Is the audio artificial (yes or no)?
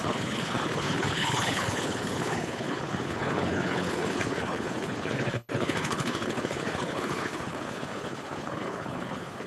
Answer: yes